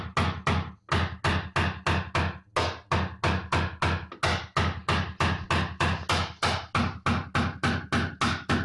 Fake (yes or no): no